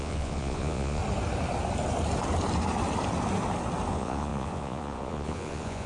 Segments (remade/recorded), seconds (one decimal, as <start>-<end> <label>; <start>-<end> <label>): 0.0-1.0 remade; 1.0-3.9 recorded; 3.9-5.9 remade